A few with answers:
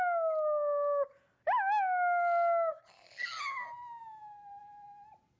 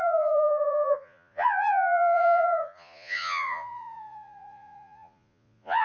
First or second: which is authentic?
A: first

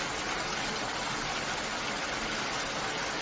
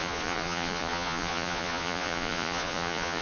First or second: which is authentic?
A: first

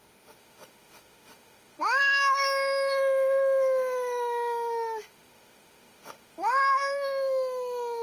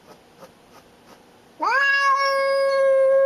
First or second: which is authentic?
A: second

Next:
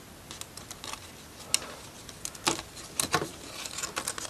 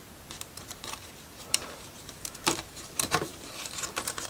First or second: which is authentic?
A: first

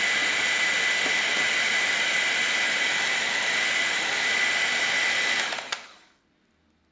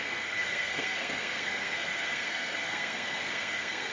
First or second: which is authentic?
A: first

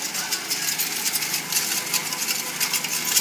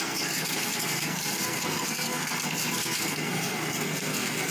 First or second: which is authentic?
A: first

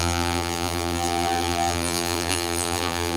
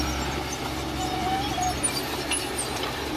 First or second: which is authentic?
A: second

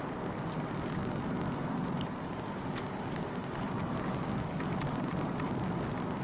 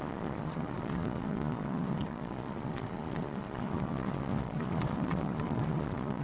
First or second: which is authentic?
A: first